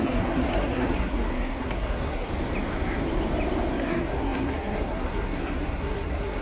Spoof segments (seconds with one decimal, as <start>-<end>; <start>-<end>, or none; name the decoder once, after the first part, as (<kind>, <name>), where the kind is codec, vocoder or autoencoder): 0.0-2.3 (codec, SNAC); 3.7-6.4